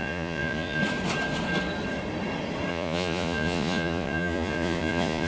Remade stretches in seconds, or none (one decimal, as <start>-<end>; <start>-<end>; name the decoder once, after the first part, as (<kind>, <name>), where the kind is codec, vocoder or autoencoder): 0.0-0.8 (vocoder, Vocos); 2.7-5.3